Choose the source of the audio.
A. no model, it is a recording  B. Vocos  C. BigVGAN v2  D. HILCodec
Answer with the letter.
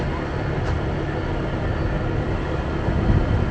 A